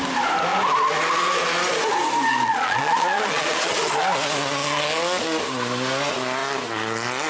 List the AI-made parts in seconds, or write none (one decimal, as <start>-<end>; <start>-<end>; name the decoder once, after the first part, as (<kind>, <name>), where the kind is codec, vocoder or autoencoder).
2.3-3.9 (vocoder, Vocos)